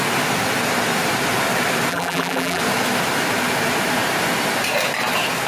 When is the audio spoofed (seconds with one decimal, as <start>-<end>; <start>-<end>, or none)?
1.9-2.6